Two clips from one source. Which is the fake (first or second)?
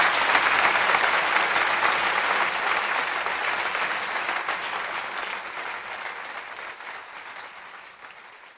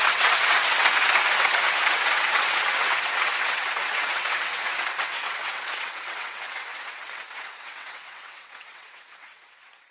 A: second